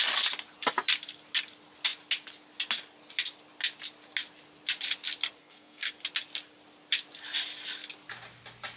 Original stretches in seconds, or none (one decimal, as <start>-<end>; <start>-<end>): 0.0-5.4; 5.9-8.8